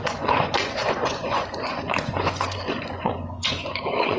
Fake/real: fake